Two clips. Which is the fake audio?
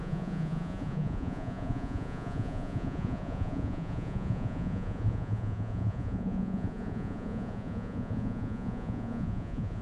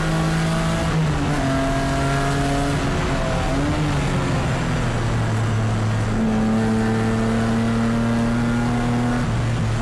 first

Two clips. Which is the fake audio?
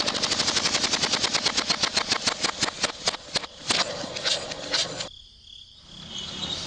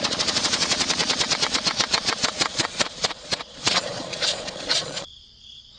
second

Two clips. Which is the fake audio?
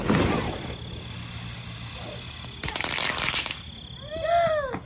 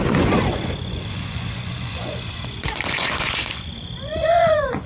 second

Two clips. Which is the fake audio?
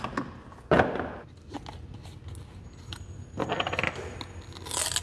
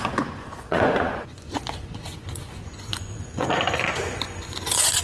second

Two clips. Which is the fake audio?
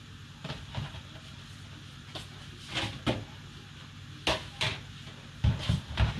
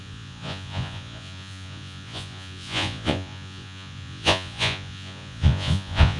second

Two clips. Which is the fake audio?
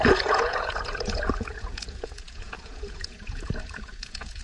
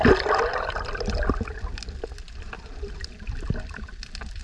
first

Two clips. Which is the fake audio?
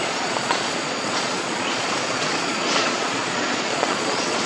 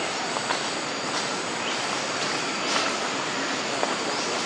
first